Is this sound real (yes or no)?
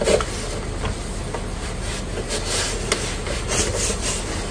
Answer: yes